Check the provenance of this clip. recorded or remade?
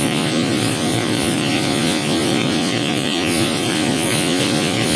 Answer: remade